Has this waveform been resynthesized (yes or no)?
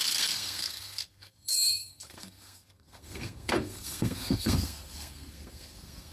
yes